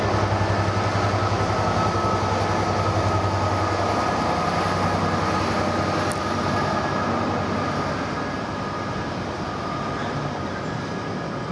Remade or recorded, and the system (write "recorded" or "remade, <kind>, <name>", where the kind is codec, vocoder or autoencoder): recorded